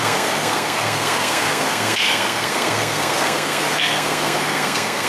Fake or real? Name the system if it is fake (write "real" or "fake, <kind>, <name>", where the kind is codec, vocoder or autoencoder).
fake, codec, SNAC